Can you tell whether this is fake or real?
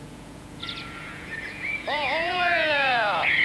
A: fake